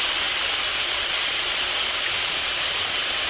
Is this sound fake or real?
fake